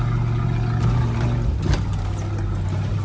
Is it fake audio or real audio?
real